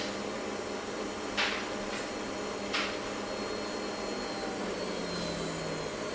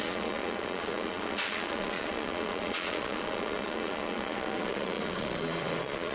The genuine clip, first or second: first